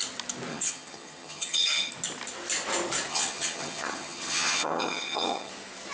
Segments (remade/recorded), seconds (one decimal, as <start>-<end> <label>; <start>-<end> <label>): 0.0-0.5 recorded; 0.5-1.9 remade; 1.9-3.1 recorded; 3.1-5.5 remade; 5.5-5.9 recorded